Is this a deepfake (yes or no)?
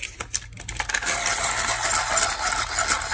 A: no